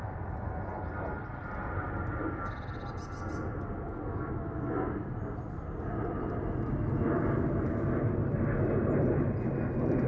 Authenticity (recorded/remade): recorded